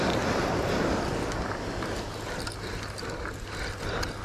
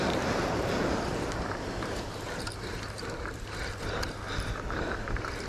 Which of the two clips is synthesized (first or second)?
second